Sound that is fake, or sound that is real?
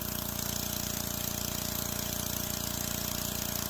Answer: real